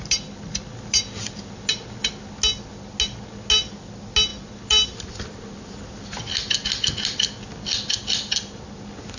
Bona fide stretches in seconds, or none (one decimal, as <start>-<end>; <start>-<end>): 0.0-9.2